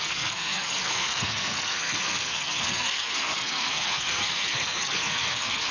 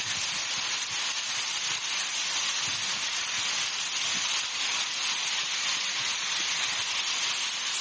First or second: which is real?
second